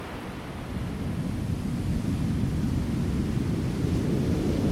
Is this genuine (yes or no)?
yes